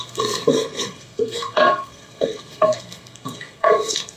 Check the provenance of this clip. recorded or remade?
remade